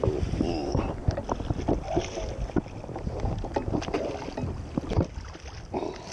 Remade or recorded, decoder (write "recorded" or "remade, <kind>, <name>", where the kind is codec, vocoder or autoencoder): recorded